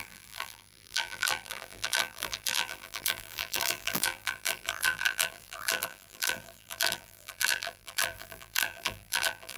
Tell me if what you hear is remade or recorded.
remade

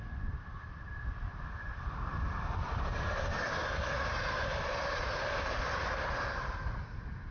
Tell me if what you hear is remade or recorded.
remade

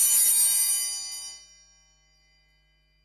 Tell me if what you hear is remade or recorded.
recorded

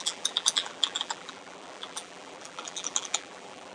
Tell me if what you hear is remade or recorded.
remade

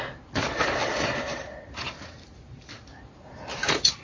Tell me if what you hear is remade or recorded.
remade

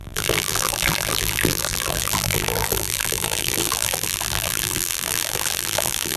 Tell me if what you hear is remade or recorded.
remade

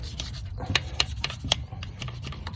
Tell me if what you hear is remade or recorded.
remade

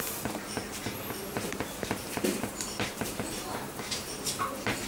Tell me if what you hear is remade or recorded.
remade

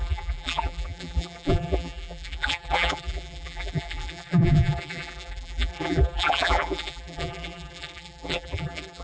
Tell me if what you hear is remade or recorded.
remade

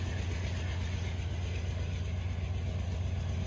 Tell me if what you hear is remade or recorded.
recorded